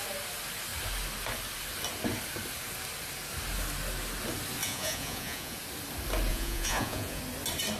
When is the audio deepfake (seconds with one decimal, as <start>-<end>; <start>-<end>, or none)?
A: 4.6-5.6; 6.3-7.2